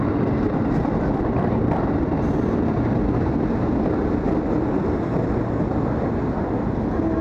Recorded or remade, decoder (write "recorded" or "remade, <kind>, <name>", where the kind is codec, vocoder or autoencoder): recorded